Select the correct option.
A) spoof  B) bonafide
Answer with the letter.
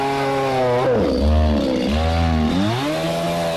B